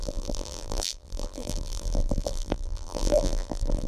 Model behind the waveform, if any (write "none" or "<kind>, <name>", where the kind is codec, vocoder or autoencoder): vocoder, BigVGAN v2